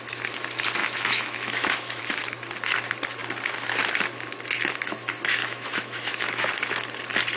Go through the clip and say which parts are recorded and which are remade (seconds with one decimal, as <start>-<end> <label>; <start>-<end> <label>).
0.0-0.8 recorded; 0.8-2.0 remade; 2.0-5.4 recorded; 5.4-6.5 remade; 6.5-7.4 recorded